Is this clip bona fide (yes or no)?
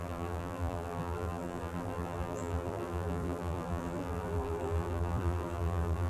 no